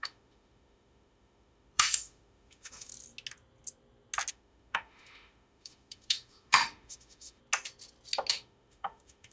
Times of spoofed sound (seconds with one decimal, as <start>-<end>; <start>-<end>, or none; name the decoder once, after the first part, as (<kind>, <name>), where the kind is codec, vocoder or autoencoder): 0.0-2.9 (autoencoder, DAC-VAE); 4.3-7.4; 8.3-9.3